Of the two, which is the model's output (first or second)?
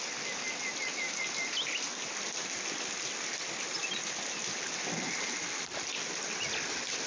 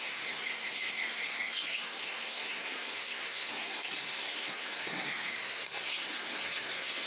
second